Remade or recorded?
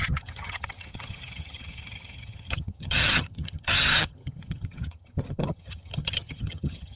remade